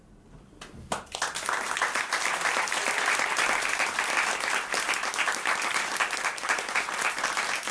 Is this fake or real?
real